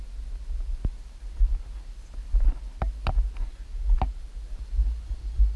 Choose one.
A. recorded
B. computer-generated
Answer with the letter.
A